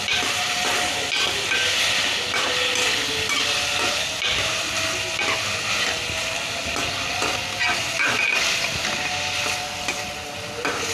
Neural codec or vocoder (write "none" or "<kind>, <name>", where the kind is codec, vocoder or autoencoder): none